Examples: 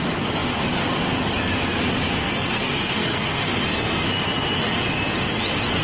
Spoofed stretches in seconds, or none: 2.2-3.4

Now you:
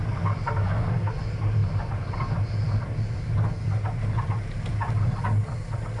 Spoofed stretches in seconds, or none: 0.6-1.1

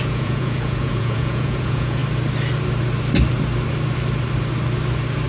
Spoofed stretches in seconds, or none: 0.0-2.0

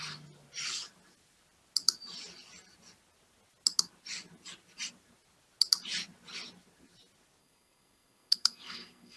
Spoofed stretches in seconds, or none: 7.4-9.2

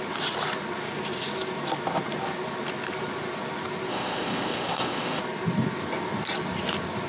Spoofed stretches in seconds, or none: 3.9-5.2

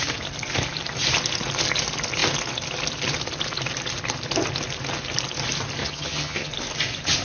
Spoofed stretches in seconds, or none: 5.8-6.5

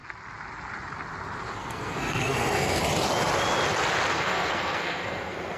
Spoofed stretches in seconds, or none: 1.6-2.8; 4.1-5.6